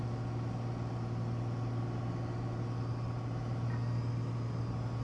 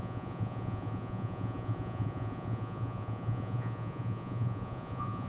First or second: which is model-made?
second